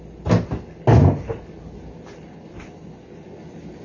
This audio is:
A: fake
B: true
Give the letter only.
B